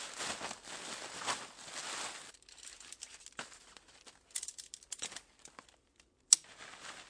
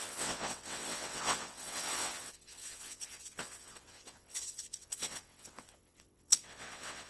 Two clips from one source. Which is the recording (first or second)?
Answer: first